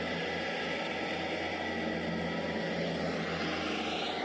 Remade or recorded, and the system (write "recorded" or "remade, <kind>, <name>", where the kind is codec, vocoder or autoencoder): recorded